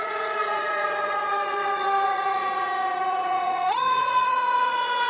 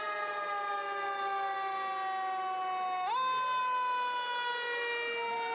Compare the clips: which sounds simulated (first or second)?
first